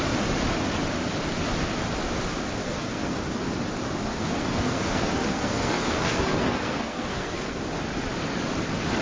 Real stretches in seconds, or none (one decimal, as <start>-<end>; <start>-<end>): 0.0-2.6; 3.2-4.1; 7.6-9.0